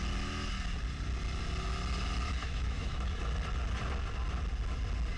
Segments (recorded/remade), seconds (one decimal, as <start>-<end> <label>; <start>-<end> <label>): 0.0-2.4 recorded; 2.4-3.2 remade; 3.2-5.2 recorded